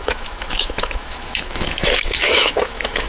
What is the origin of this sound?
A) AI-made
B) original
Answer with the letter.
A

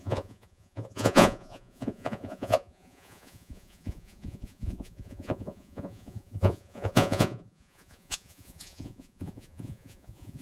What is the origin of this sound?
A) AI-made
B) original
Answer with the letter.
A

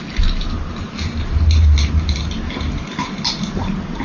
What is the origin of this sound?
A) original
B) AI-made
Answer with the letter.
A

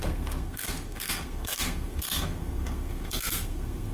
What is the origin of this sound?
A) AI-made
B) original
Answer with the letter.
A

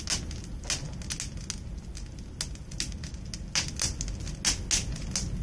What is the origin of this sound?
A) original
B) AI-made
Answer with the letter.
A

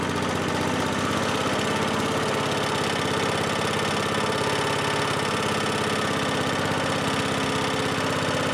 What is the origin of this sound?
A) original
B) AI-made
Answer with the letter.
A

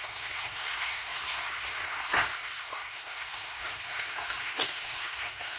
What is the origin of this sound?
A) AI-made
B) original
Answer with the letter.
A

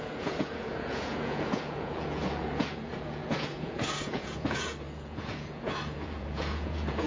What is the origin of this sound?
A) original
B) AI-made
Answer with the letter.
B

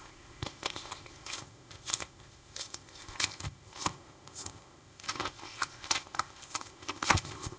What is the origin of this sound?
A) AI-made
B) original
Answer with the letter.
A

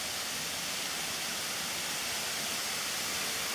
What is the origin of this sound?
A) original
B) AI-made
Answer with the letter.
A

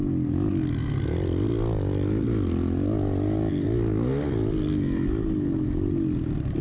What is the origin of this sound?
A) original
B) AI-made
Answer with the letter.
A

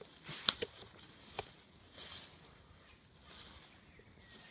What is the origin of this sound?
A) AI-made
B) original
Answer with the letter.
B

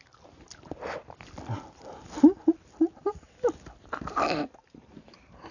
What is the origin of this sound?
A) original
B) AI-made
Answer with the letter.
A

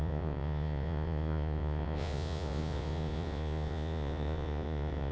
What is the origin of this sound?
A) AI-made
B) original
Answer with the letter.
A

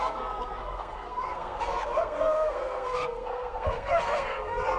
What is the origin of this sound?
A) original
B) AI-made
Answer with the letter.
B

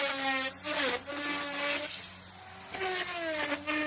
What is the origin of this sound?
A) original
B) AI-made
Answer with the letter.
A